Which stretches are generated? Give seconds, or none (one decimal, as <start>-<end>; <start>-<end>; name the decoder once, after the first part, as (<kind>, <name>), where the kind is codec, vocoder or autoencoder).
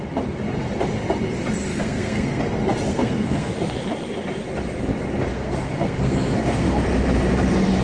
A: 1.7-2.4 (codec, SNAC); 2.9-3.5; 5.3-6.8